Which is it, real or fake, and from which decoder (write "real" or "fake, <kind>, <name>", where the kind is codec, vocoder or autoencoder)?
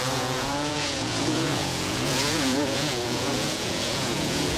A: fake, vocoder, Vocos